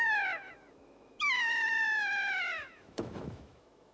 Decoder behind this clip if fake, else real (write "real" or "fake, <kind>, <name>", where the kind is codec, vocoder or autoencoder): fake, autoencoder, DAC-VAE